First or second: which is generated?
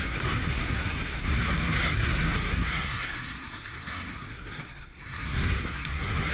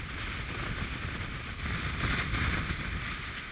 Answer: first